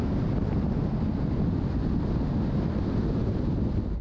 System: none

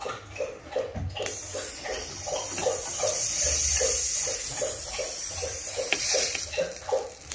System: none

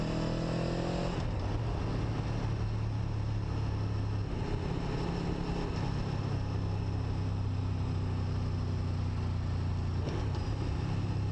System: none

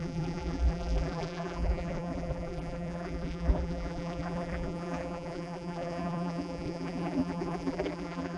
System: vocoder, BigVGAN v2